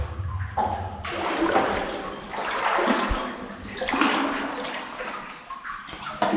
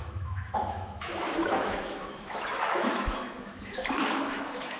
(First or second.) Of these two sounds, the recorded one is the first